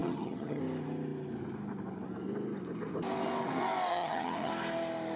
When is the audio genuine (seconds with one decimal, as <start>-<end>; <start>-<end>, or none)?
0.6-3.9; 4.5-5.2